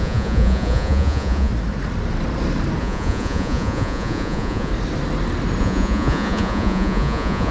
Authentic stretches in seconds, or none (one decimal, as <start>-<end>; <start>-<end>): 1.5-2.8; 4.7-5.6